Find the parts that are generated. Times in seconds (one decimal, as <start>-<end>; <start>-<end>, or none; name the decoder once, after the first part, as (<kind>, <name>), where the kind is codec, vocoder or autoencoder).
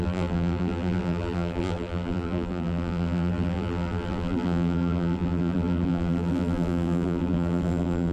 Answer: 0.0-8.1 (vocoder, BigVGAN v2)